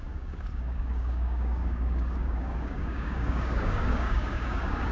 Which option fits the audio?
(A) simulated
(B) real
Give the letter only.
A